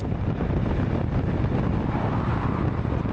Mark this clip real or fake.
real